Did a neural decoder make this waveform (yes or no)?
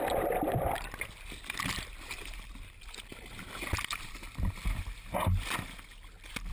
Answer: yes